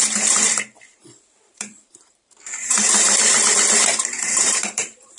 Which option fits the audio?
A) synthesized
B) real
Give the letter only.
A